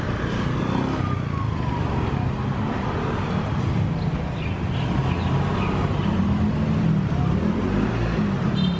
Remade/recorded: recorded